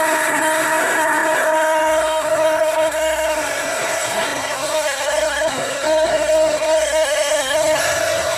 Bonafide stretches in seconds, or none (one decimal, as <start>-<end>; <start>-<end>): none